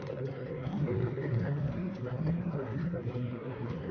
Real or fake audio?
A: fake